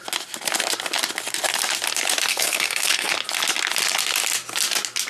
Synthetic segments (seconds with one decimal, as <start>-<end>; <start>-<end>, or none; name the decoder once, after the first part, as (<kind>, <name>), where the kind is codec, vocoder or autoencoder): 2.3-3.1 (codec, SNAC)